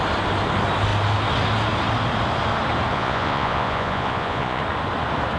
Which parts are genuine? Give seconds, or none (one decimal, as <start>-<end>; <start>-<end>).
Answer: 0.0-2.9; 4.6-5.4